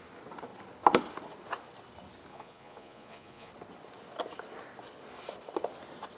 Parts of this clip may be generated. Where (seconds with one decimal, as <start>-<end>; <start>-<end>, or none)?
2.3-3.5